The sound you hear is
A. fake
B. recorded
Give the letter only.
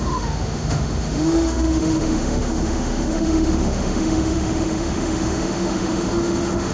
A